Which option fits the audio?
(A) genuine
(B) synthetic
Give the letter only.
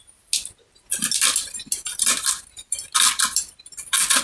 A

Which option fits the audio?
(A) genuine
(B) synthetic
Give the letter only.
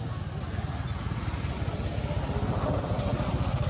A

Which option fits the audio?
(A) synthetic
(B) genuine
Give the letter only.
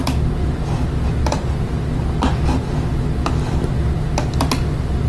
B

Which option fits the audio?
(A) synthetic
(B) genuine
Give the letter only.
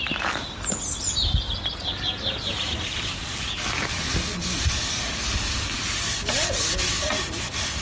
B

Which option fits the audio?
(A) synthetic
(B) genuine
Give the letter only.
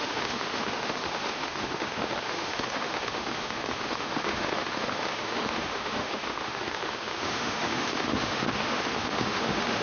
A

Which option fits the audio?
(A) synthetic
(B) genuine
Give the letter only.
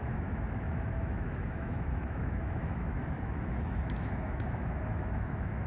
A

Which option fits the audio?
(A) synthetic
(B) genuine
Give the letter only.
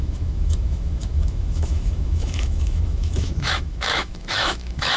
A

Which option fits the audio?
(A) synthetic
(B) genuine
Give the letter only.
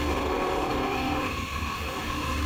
A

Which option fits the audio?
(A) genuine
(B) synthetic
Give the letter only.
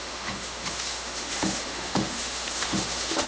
B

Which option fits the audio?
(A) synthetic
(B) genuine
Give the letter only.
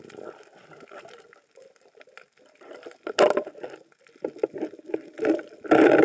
B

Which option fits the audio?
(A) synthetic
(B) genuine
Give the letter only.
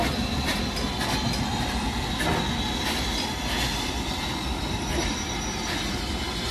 B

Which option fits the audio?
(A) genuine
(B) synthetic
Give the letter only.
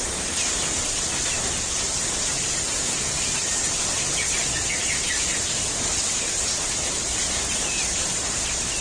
A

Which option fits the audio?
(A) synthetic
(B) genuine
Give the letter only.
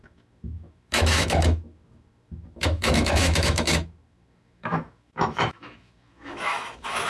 A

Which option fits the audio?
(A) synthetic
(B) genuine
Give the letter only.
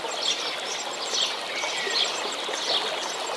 B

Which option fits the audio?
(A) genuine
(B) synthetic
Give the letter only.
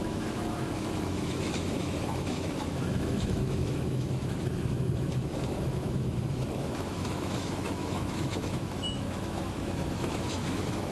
B